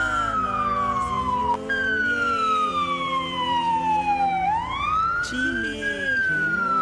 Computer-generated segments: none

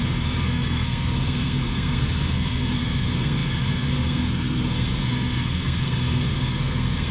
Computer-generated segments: 0.0-7.1 (codec, SNAC)